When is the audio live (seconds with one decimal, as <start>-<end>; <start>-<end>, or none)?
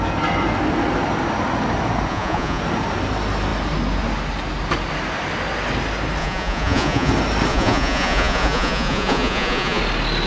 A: 0.0-2.1; 2.6-6.2; 7.1-7.5; 9.8-10.3